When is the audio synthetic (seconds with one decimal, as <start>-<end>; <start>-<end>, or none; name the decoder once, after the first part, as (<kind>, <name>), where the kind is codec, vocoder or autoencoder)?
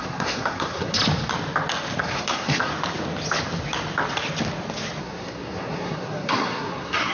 0.0-1.0 (codec, SNAC); 2.0-2.7; 5.0-7.1